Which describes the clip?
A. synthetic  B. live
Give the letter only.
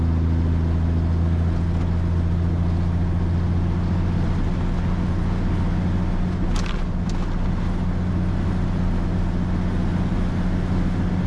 B